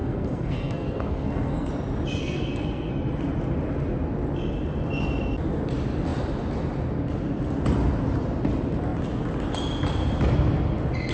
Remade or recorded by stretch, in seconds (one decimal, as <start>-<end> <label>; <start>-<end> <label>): 0.0-1.7 remade; 1.7-2.2 recorded; 2.2-2.9 remade; 2.9-11.1 recorded